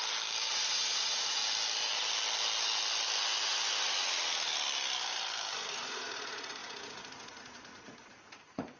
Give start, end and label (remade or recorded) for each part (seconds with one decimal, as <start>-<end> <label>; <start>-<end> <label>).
0.0-0.5 recorded; 0.5-1.4 remade; 1.4-5.7 recorded; 5.7-8.8 remade